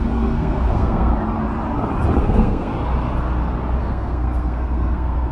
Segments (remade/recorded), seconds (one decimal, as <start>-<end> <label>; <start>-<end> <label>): 0.0-1.1 remade; 1.1-2.2 recorded; 2.2-2.7 remade; 2.7-3.8 recorded; 3.8-5.3 remade